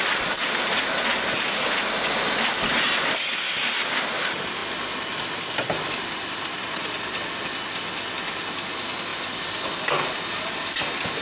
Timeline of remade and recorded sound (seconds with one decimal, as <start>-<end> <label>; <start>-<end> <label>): 0.0-11.2 recorded